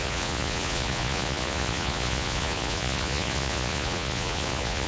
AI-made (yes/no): yes